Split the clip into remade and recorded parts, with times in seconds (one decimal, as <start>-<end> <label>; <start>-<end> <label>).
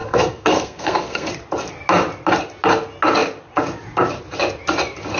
0.0-1.3 remade; 1.3-5.2 recorded